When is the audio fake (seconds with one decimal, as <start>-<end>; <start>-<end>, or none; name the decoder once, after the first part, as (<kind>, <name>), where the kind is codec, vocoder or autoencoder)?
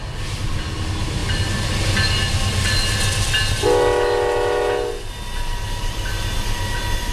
none